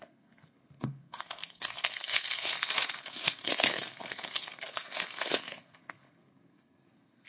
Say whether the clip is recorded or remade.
remade